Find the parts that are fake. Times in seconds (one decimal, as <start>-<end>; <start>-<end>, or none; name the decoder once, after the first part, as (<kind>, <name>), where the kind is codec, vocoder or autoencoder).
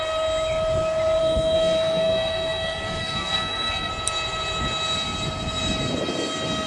1.2-3.9 (codec, SNAC)